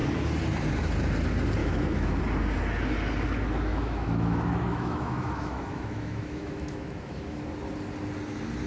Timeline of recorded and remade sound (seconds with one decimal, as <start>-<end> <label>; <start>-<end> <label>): 0.0-1.6 recorded; 1.6-2.2 remade; 2.2-3.7 recorded; 3.7-7.4 remade; 7.4-8.7 recorded